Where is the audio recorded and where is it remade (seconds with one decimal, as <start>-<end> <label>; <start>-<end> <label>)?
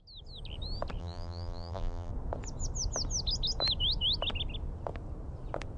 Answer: 0.0-1.0 recorded; 1.0-2.1 remade; 2.1-5.8 recorded